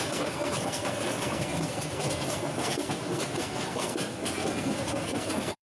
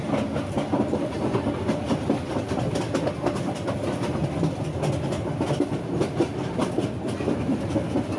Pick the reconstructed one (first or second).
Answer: first